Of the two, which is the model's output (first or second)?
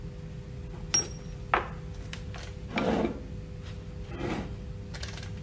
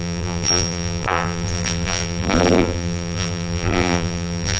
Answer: second